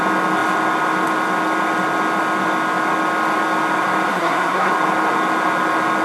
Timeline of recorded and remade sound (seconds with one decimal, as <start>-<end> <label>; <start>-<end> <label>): 0.0-4.1 recorded; 4.1-4.7 remade; 4.7-6.0 recorded